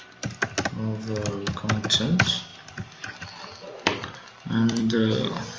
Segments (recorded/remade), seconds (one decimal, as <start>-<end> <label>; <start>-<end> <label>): 0.0-2.5 recorded; 2.5-5.6 remade